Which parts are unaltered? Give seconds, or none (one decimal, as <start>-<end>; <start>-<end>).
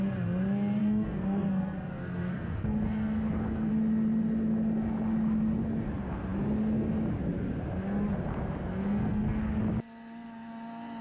0.0-0.8; 3.7-8.7; 9.4-11.0